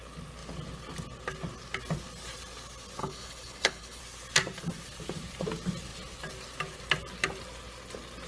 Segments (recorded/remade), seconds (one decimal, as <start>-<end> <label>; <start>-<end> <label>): 0.0-3.0 recorded; 3.0-4.0 remade; 4.0-8.3 recorded